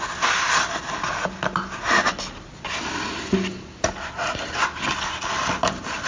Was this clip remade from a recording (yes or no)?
no